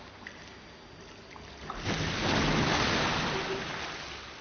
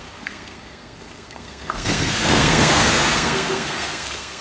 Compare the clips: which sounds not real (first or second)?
second